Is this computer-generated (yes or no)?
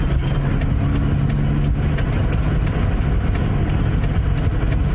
no